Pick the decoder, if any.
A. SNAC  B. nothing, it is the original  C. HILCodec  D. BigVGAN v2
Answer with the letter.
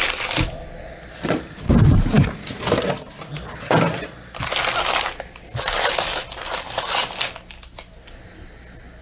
B